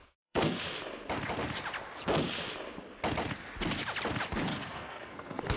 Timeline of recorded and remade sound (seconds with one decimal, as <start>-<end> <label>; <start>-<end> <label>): 0.0-0.6 remade; 0.6-4.5 recorded; 4.5-5.6 remade